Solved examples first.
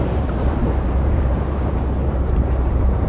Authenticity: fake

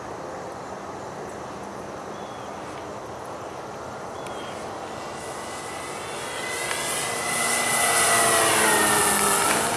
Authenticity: real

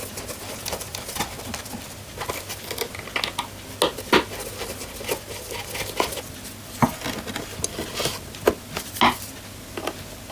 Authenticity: real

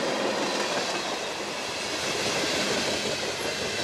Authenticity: real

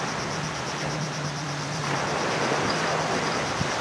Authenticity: real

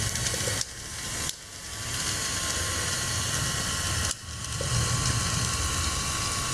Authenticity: real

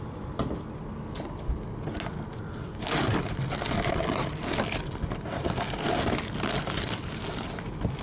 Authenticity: real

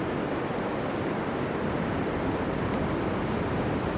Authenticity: real